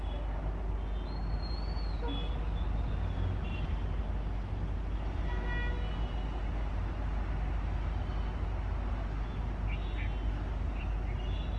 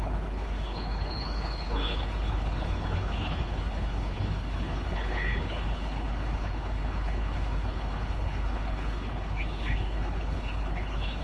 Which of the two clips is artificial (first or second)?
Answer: second